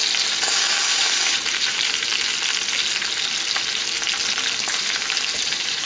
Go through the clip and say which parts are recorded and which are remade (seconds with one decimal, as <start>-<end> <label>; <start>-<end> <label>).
0.0-0.9 recorded; 0.9-2.1 remade; 2.1-4.7 recorded; 4.7-5.9 remade